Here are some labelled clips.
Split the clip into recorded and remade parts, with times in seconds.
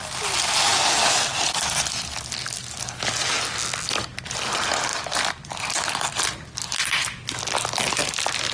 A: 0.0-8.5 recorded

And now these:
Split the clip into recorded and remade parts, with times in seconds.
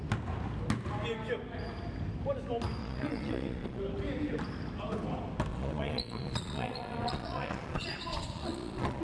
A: 0.0-2.8 recorded; 2.8-3.8 remade; 3.8-5.5 recorded; 5.5-9.0 remade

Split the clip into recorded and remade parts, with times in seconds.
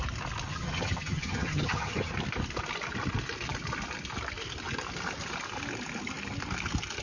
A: 0.0-0.5 recorded; 0.5-2.1 remade; 2.1-7.0 recorded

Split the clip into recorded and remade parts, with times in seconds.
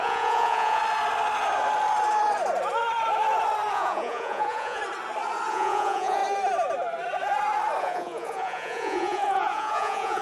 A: 0.0-0.8 remade; 0.8-3.7 recorded; 3.7-4.8 remade; 4.8-5.5 recorded; 5.5-6.2 remade; 6.2-7.8 recorded; 7.8-10.2 remade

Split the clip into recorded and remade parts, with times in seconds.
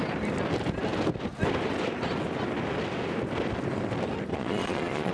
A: 0.0-4.3 recorded; 4.3-5.1 remade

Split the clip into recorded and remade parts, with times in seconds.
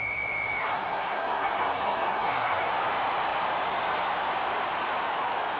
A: 0.0-0.6 recorded; 0.6-2.7 remade; 2.7-5.6 recorded